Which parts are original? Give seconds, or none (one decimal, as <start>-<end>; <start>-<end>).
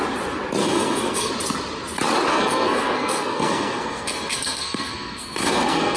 0.0-0.6; 1.3-2.3